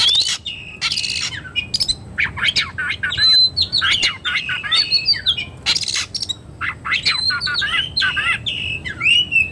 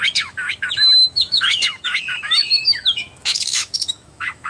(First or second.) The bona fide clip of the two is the first